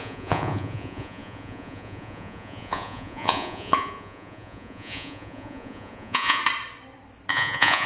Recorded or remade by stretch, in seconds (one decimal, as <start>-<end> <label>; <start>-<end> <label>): 0.0-6.4 remade; 6.4-7.3 recorded; 7.3-7.9 remade